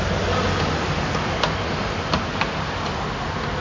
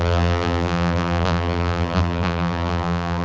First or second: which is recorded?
first